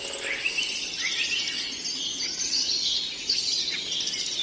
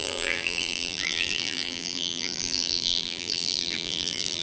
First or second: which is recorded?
first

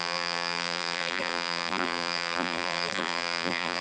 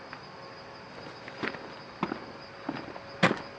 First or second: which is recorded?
second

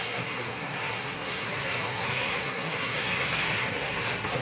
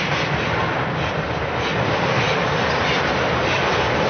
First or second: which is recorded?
second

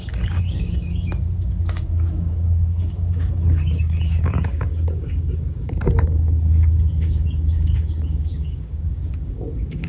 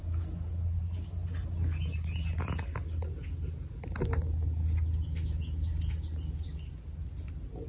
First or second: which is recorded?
second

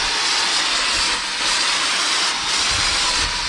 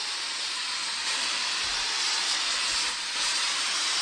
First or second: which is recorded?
first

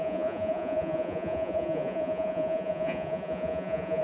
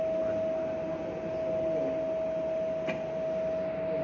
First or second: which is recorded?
second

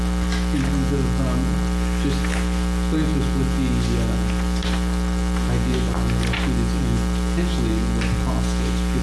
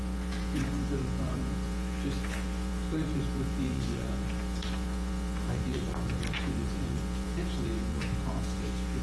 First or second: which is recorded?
first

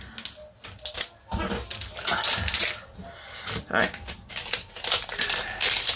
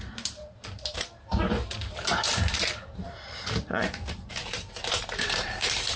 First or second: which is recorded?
first